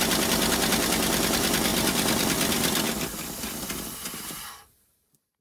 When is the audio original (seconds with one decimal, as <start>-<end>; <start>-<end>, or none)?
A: none